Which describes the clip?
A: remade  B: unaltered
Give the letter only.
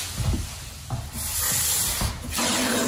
B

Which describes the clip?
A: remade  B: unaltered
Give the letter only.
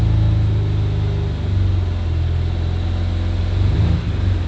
B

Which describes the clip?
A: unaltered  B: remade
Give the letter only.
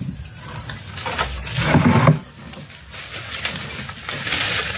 A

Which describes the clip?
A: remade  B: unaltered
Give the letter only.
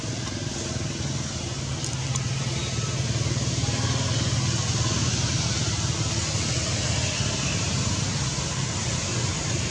B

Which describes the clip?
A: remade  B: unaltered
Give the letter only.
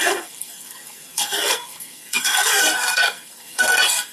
A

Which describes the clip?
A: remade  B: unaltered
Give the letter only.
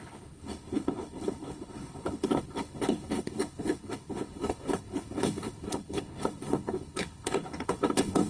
A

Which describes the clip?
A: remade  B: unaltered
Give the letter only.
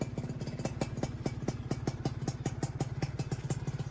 B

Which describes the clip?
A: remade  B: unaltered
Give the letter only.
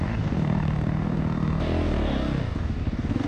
A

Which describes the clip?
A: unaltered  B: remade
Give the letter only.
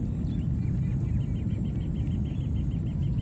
A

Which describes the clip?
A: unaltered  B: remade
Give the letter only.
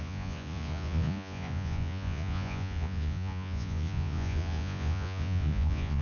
B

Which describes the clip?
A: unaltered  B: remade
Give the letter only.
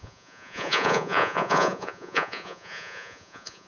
B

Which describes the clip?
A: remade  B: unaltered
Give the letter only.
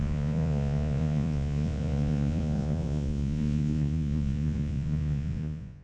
A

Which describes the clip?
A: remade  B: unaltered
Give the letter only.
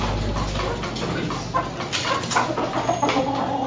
B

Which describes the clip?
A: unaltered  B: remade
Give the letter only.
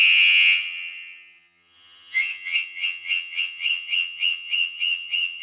B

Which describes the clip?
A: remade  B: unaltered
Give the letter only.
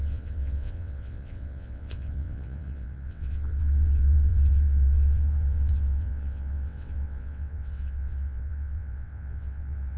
A